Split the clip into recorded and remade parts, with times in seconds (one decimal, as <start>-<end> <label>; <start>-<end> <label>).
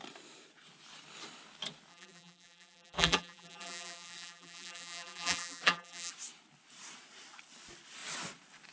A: 0.0-1.9 recorded; 1.9-6.1 remade; 6.1-8.7 recorded